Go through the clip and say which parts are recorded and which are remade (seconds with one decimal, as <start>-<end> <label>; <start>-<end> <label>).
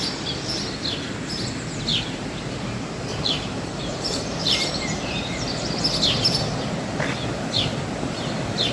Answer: 0.0-1.9 recorded; 1.9-5.8 remade; 5.8-8.7 recorded